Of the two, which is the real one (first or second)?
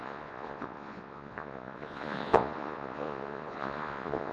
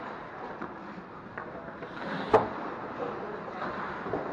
second